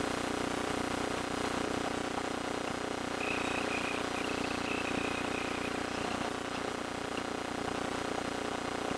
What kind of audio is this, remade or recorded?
recorded